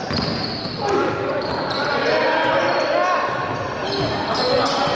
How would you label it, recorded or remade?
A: recorded